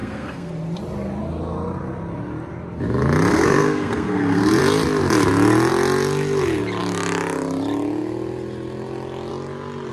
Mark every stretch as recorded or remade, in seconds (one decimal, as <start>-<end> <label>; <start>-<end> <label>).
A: 0.0-0.5 remade; 0.5-3.3 recorded; 3.3-4.6 remade; 4.6-9.9 recorded